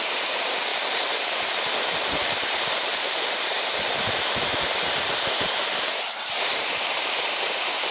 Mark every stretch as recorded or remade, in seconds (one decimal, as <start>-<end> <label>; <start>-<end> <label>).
0.0-0.7 remade; 0.7-1.8 recorded; 1.8-7.9 remade